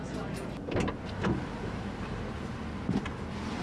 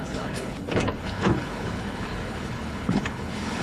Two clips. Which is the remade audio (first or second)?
second